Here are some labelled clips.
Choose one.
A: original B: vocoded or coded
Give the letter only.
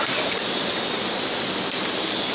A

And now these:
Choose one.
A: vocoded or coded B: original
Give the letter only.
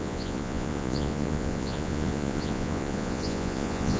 A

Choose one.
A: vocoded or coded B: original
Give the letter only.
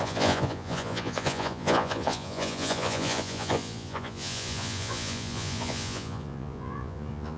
A